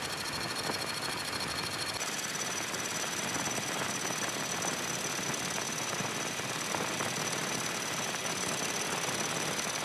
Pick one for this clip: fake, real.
real